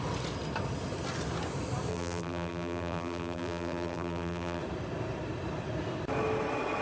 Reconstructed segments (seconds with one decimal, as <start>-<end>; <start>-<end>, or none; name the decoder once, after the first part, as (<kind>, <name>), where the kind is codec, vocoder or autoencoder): 1.9-4.6 (vocoder, BigVGAN v2)